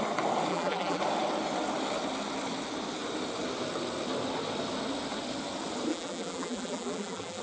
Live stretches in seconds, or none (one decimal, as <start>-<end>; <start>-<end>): 0.0-0.5; 1.0-5.9